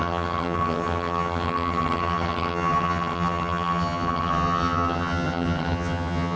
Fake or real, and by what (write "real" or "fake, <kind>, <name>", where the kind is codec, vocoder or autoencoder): fake, vocoder, HiFi-GAN